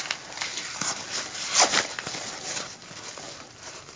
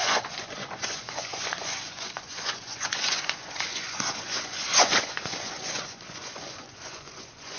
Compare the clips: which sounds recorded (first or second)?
first